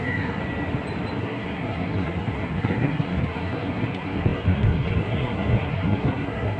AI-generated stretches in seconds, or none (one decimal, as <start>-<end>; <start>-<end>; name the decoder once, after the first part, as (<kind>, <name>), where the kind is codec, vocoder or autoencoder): 0.0-0.4 (codec, SNAC); 1.2-6.6